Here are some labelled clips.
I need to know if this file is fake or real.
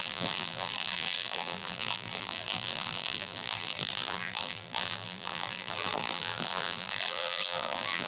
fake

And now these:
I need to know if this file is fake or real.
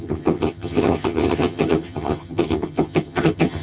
fake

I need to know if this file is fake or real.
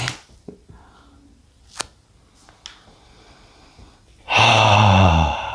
real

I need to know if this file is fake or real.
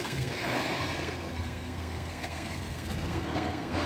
fake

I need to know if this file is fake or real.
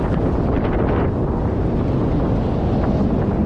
real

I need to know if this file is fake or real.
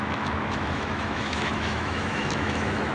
fake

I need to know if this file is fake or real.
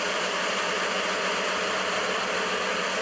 fake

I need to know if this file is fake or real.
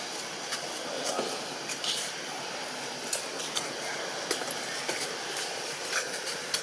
real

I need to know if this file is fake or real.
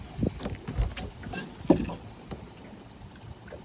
real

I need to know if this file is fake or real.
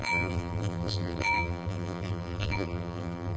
fake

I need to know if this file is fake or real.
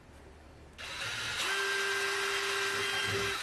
real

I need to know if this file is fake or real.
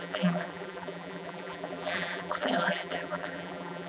fake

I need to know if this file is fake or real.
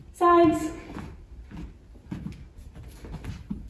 real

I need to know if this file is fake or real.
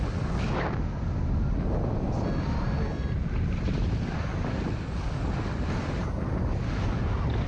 real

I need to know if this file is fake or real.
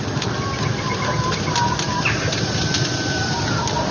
real